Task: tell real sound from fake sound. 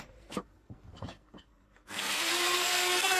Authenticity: fake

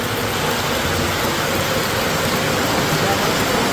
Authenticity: real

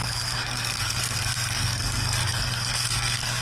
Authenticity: fake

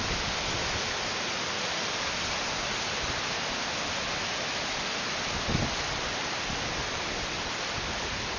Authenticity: real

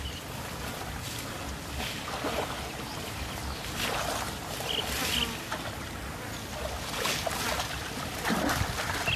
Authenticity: real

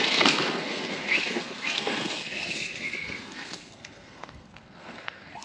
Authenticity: fake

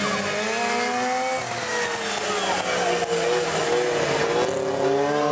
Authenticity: real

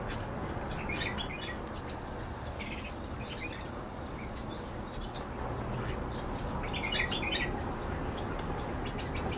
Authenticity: real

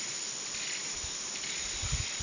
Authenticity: real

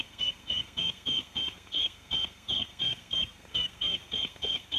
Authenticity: fake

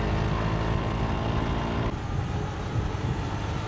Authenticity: real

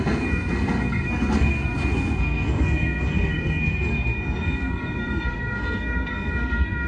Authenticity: fake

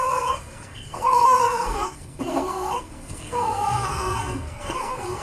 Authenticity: fake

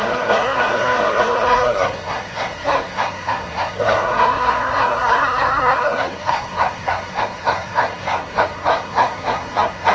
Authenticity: fake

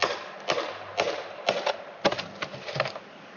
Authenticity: real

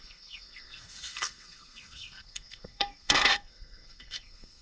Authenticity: fake